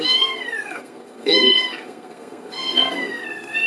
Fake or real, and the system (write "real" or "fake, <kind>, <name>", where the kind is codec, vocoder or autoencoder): fake, codec, SNAC